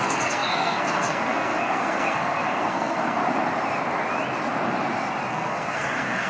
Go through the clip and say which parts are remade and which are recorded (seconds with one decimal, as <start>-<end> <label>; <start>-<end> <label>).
0.0-3.2 remade; 3.2-5.3 recorded; 5.3-6.3 remade